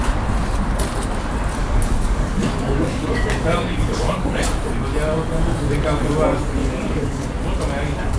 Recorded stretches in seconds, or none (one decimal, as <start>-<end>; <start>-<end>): 0.0-1.6; 4.4-6.6; 7.3-8.2